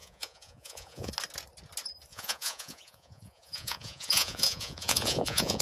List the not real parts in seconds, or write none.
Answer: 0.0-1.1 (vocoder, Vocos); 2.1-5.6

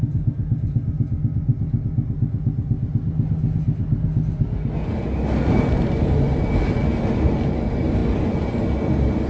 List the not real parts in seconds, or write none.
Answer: none

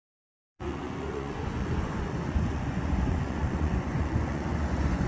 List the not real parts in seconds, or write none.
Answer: 0.0-5.1 (vocoder, Vocos)